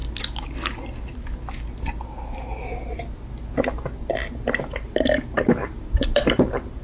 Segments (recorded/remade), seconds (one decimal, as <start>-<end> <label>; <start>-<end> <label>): 0.0-4.1 recorded; 4.1-6.8 remade